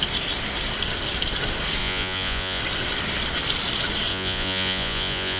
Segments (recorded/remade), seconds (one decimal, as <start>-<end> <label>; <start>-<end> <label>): 0.0-1.8 recorded; 1.8-2.6 remade; 2.6-4.1 recorded; 4.1-5.4 remade